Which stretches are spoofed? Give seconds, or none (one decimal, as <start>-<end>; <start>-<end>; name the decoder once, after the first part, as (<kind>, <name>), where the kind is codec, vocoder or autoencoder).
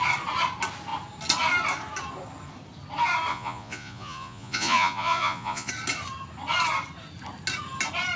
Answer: 3.3-5.7 (vocoder, Vocos)